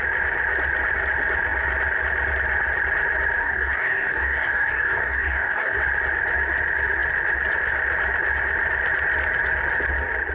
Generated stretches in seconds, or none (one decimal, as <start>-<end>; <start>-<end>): 3.4-5.8